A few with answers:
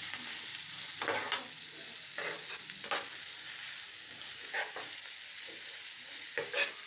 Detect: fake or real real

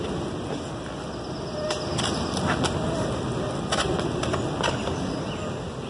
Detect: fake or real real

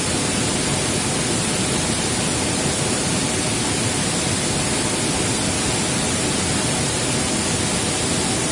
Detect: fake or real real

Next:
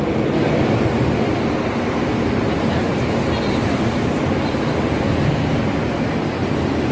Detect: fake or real real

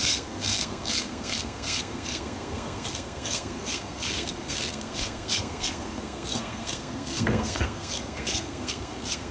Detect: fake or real fake